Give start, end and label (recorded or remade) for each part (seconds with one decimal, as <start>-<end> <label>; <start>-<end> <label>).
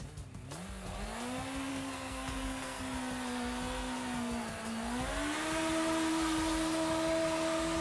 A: 0.0-1.7 recorded; 1.7-2.8 remade; 2.8-7.8 recorded